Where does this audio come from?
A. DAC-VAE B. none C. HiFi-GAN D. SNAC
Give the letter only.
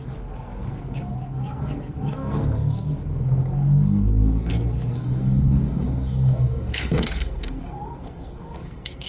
D